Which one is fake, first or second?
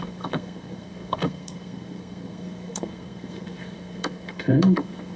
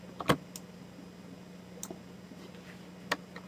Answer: first